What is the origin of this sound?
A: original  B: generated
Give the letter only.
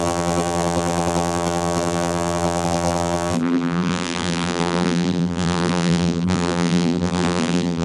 B